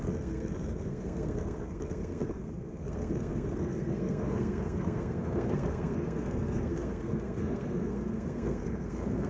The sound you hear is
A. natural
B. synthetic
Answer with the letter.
B